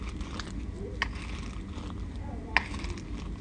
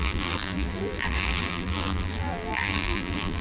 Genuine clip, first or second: first